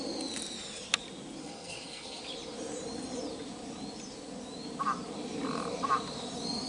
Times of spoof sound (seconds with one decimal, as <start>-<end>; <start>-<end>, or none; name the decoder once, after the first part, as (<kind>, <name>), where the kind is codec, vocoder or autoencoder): 1.4-2.2 (codec, SNAC)